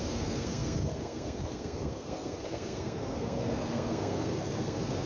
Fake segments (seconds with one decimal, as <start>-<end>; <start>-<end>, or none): 0.0-5.1